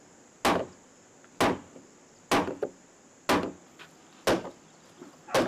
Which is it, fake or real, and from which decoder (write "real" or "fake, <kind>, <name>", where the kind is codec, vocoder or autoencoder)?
real